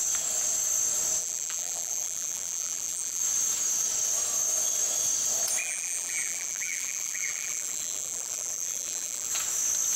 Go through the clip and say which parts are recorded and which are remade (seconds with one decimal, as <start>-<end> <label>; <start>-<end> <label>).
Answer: 0.0-1.2 recorded; 1.2-3.2 remade; 3.2-5.6 recorded; 5.6-9.3 remade; 9.3-10.0 recorded